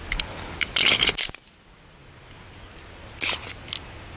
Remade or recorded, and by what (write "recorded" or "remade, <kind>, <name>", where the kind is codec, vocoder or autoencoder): recorded